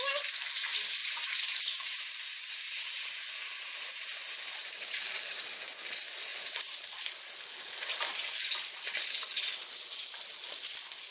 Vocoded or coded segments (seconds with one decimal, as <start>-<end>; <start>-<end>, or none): 1.0-2.5; 4.6-5.4